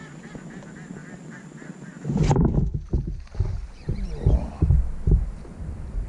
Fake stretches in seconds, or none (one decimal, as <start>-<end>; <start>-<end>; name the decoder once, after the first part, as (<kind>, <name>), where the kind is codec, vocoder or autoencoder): 1.0-4.6 (vocoder, BigVGAN v2)